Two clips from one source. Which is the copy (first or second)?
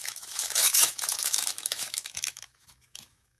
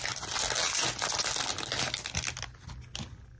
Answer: first